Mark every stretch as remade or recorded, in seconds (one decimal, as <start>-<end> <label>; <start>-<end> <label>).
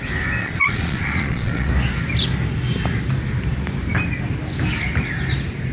0.0-0.4 recorded; 0.4-1.7 remade; 1.7-5.7 recorded